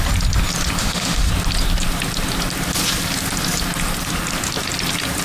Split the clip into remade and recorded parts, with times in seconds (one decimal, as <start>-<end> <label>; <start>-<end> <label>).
0.0-0.8 recorded; 0.8-1.3 remade; 1.3-5.2 recorded